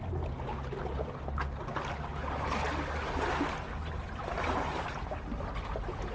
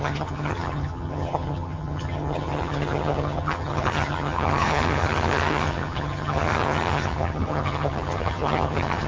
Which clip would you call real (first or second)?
first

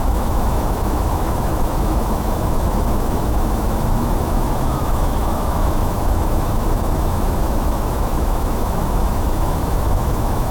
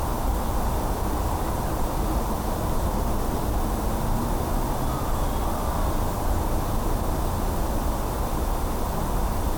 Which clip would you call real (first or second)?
second